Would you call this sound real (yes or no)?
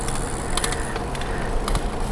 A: yes